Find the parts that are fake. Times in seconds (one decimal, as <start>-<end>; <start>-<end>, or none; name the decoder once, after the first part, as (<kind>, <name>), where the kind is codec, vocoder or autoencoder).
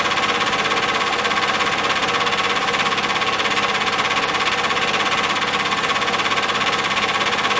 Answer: none